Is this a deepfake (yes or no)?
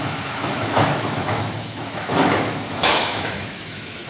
yes